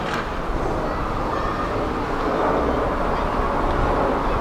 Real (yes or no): yes